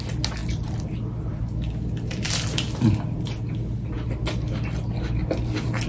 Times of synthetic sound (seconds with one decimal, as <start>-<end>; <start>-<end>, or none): none

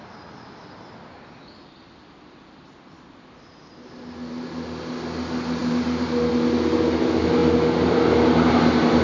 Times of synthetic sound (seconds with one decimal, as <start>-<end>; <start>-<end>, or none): none

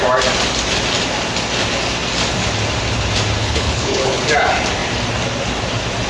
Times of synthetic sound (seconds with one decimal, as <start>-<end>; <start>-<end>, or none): 3.4-4.2

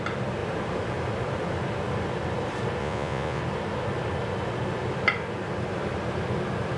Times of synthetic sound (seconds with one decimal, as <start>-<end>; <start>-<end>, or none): 2.8-3.4

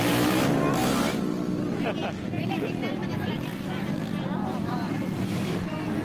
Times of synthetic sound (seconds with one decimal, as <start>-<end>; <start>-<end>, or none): 4.4-5.2

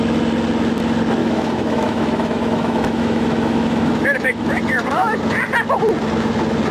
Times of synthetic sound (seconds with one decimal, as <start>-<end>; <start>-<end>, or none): 1.2-5.2

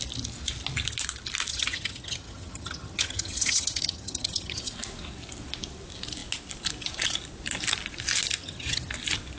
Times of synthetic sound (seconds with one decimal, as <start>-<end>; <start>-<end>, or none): 1.5-4.7; 8.4-8.9

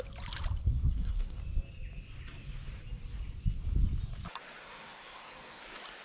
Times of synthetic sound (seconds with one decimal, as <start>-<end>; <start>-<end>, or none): 0.6-1.4; 4.6-5.6